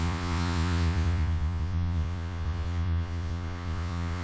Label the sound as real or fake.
fake